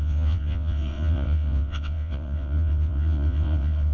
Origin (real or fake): fake